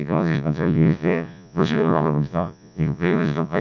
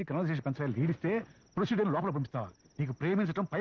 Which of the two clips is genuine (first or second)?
second